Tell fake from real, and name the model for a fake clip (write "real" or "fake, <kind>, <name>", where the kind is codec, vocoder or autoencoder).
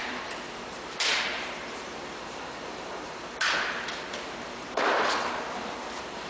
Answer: fake, vocoder, BigVGAN v2